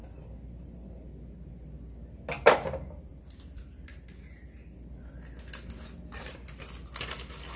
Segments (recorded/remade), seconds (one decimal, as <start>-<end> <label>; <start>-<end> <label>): 0.0-7.6 recorded